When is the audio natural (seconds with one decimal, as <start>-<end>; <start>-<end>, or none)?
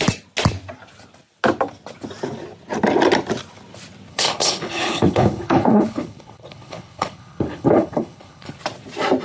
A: 0.0-4.1; 8.6-9.2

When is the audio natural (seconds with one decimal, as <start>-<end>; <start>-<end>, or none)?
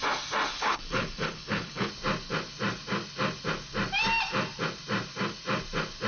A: 0.0-0.5; 1.9-6.1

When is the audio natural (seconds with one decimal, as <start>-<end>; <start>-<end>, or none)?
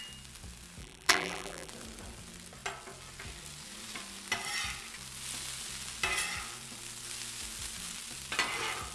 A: 0.0-0.8; 1.7-8.9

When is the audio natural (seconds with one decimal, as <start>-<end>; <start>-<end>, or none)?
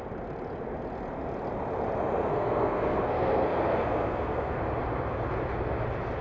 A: 0.0-2.3; 4.6-6.2